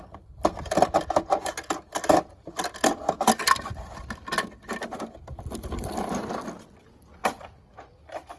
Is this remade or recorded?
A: recorded